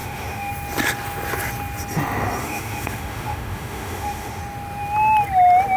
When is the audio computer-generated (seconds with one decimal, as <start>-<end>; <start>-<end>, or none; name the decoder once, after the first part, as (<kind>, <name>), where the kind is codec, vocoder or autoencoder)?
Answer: 0.0-0.5 (autoencoder, DAC-VAE); 2.4-4.4